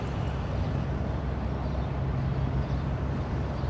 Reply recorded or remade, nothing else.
recorded